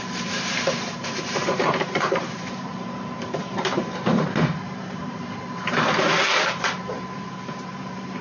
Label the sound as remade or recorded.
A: remade